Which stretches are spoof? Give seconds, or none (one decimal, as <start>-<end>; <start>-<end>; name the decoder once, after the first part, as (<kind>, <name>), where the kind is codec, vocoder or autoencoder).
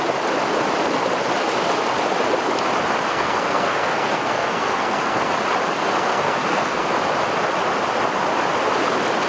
3.1-5.3 (codec, SNAC); 5.8-6.9